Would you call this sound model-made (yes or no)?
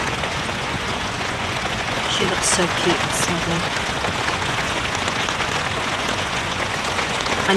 yes